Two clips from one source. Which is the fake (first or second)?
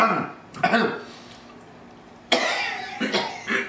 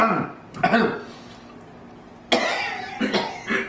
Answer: first